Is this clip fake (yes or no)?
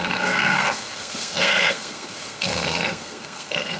yes